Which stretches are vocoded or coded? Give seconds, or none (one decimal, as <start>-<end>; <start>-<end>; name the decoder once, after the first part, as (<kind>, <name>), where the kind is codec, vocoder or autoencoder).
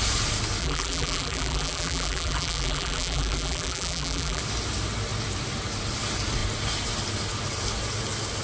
0.6-4.4 (vocoder, BigVGAN v2)